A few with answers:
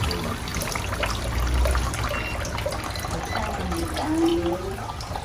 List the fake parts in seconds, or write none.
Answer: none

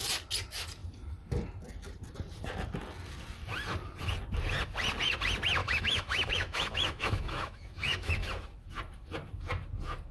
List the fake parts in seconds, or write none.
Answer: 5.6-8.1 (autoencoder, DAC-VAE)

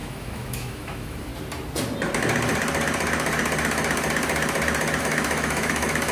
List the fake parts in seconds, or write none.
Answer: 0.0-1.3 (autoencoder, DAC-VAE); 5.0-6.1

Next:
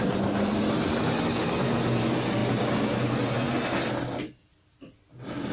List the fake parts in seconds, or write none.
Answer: none

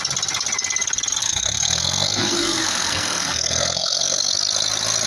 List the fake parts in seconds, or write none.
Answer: 1.2-4.3 (codec, SNAC)